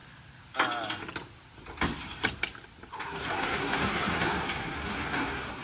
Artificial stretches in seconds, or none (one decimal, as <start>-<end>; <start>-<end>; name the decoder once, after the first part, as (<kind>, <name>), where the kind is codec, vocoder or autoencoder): 2.9-5.6 (codec, SNAC)